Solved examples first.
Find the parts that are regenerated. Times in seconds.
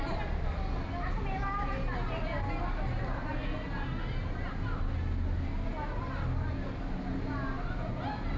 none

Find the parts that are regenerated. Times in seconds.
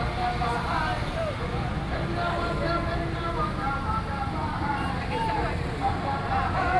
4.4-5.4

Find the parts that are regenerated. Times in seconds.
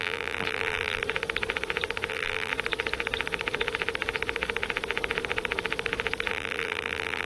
0.0-1.0; 2.1-2.5; 6.3-7.3